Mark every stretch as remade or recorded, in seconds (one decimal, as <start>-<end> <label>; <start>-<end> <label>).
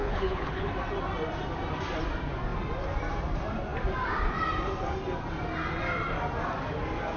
0.0-0.7 remade; 0.7-7.2 recorded